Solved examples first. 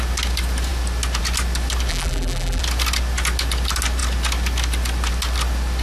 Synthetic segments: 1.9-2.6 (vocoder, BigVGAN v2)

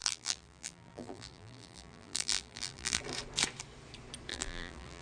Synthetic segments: 0.0-3.0 (vocoder, BigVGAN v2); 4.3-5.0

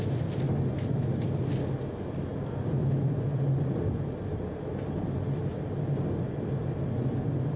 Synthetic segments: 2.3-6.5 (vocoder, BigVGAN v2)

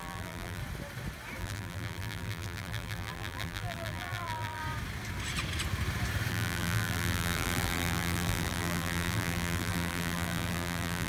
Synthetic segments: 0.0-0.6 (vocoder, BigVGAN v2); 1.4-4.6; 6.3-11.1

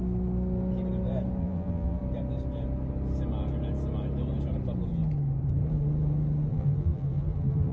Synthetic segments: 1.4-2.0 (vocoder, BigVGAN v2); 6.5-7.7

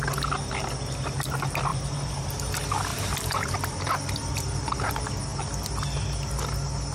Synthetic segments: 1.7-2.3 (vocoder, BigVGAN v2); 2.9-4.4